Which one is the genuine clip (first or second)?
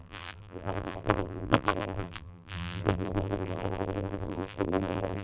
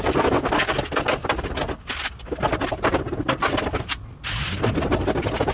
second